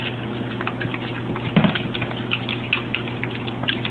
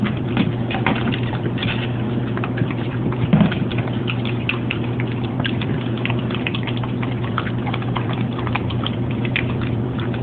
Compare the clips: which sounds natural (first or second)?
first